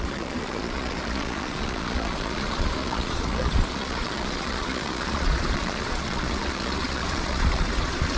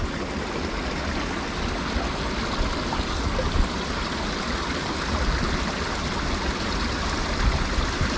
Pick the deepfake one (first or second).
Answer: first